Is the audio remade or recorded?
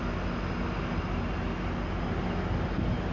recorded